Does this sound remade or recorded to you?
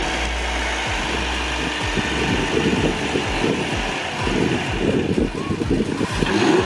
recorded